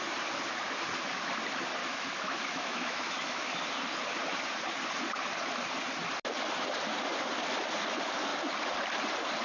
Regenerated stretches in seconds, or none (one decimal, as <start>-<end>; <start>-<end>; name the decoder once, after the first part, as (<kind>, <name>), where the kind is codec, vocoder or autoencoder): 1.8-3.5 (autoencoder, DAC-VAE)